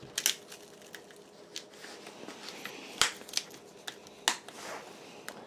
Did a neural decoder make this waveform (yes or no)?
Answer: no